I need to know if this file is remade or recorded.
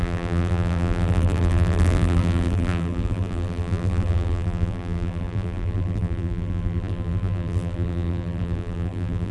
remade